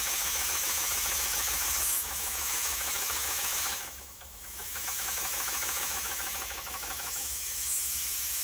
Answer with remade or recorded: remade